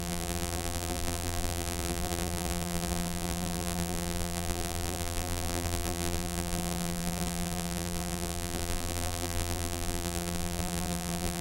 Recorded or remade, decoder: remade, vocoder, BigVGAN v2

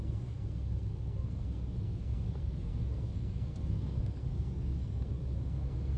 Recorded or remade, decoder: remade, codec, SNAC